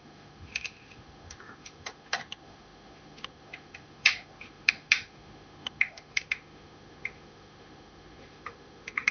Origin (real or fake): fake